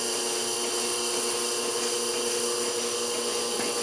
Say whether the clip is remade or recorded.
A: recorded